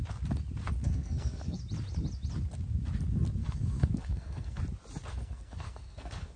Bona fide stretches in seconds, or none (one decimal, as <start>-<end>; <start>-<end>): 0.0-0.8; 1.6-3.4; 4.6-5.1